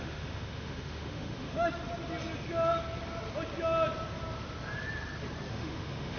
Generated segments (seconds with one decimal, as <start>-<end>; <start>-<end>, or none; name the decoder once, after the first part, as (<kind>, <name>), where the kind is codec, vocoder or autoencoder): 0.0-1.8 (autoencoder, DAC-VAE); 5.5-6.2